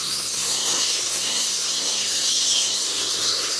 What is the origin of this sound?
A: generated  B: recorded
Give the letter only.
A